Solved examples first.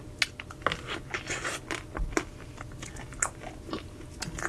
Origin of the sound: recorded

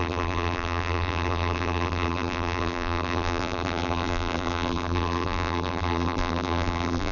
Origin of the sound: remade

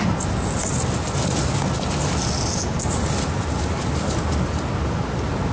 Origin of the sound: recorded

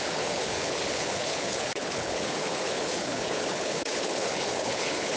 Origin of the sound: remade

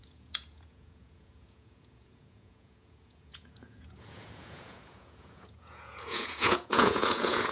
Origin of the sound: remade